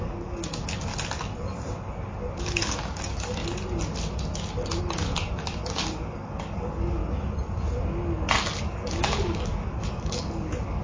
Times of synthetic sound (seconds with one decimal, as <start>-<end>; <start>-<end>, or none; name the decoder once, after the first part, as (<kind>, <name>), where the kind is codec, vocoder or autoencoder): 0.0-0.9 (codec, DAC); 2.4-3.4; 4.8-7.0; 8.6-10.8